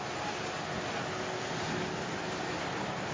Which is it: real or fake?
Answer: real